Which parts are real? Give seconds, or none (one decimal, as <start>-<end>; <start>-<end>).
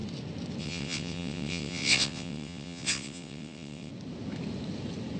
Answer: 0.0-0.6; 3.9-5.2